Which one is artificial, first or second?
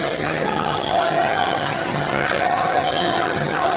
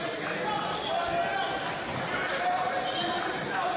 first